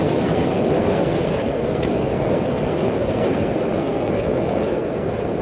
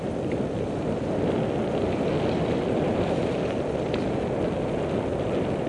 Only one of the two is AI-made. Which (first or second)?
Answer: first